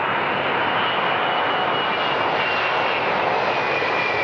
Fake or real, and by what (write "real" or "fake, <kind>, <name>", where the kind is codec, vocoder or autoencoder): real